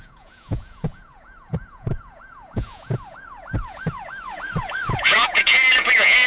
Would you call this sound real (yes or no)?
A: no